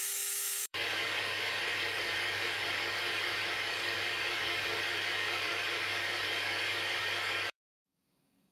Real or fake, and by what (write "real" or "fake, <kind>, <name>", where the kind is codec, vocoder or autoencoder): fake, codec, DAC